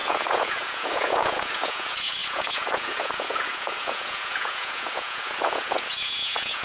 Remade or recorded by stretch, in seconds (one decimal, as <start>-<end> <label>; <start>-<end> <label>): 0.0-6.6 remade